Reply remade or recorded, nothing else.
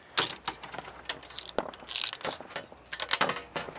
recorded